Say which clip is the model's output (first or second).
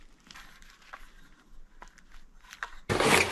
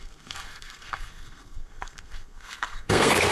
second